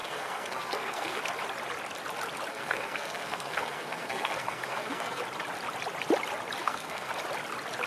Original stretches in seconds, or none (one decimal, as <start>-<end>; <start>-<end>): 1.2-2.5; 5.2-6.6; 7.1-7.9